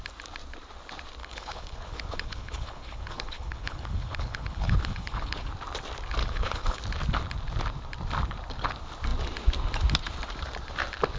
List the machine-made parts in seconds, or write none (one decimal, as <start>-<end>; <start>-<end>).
1.2-5.5; 6.2-6.8